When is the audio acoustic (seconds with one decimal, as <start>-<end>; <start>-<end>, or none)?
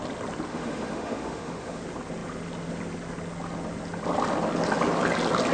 0.0-0.5; 1.8-5.5